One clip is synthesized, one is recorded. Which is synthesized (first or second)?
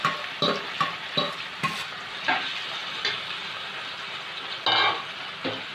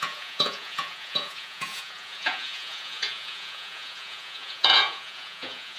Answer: second